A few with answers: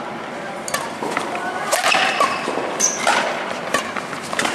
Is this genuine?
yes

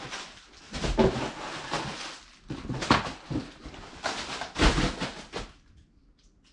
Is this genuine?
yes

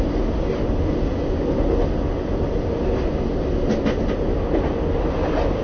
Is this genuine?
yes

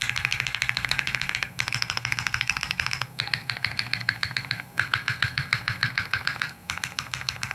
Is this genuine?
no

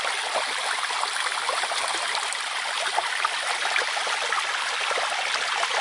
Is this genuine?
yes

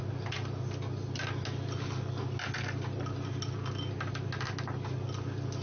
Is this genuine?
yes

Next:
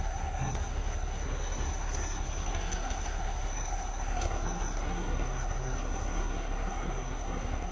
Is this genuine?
no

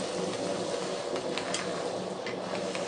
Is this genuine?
yes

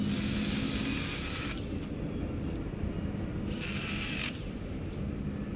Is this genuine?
yes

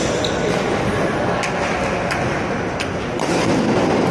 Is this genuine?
yes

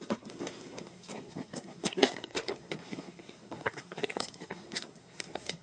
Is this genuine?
no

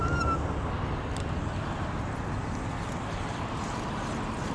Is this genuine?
yes